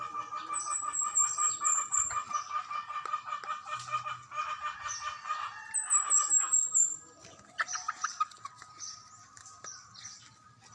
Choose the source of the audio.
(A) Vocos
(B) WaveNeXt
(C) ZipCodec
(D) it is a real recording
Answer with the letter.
D